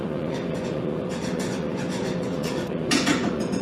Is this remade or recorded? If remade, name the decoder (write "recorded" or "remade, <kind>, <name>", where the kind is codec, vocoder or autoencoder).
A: remade, vocoder, Vocos